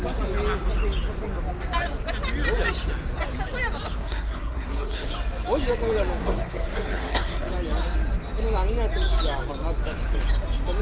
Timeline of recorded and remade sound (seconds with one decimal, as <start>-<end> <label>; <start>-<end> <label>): 0.0-4.0 recorded; 4.0-5.1 remade; 5.1-6.2 recorded; 6.2-7.5 remade; 7.5-10.8 recorded